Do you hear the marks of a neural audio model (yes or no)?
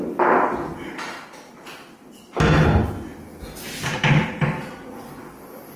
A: no